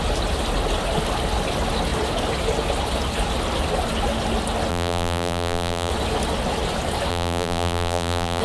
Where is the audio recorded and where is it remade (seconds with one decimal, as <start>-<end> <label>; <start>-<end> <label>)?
0.0-4.7 recorded; 4.7-5.9 remade; 5.9-7.1 recorded; 7.1-8.4 remade